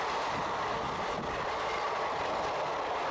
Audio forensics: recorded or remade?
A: recorded